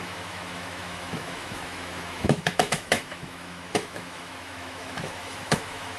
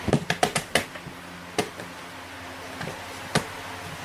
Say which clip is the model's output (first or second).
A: first